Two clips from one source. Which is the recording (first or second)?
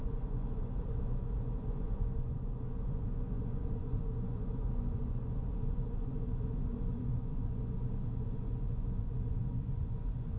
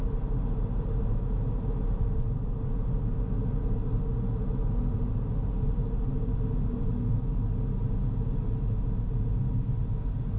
second